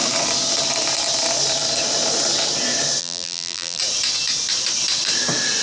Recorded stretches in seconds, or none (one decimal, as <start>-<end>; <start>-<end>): 0.0-3.0; 3.8-5.6